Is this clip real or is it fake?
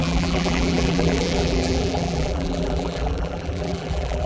fake